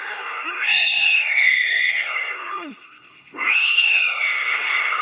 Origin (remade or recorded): remade